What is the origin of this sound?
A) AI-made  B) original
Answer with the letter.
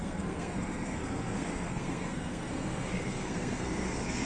A